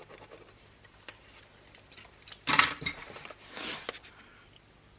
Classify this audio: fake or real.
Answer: real